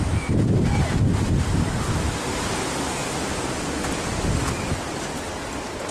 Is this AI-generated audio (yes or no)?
no